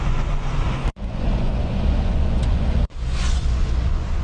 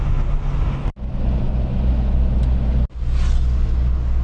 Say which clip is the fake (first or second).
first